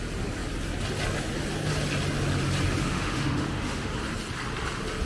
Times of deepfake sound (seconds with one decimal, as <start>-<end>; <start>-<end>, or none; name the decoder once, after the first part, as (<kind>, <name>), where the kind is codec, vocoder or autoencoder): 2.8-3.9 (autoencoder, DAC-VAE)

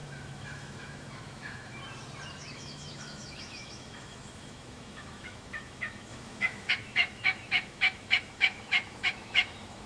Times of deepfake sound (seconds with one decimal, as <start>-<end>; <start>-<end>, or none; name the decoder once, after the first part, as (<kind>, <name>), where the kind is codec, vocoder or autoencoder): 0.0-1.8 (autoencoder, DAC-VAE); 2.3-9.9